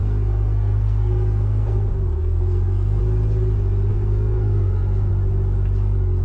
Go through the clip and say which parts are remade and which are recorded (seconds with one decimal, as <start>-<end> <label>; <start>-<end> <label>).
0.0-3.0 remade; 3.0-3.9 recorded; 3.9-5.1 remade; 5.1-6.2 recorded